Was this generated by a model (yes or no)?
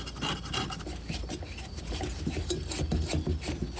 no